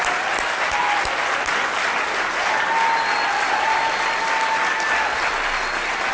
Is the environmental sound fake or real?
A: real